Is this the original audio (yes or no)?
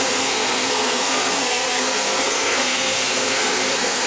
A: no